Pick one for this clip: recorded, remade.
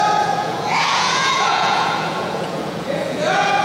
remade